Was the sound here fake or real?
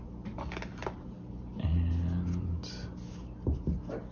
real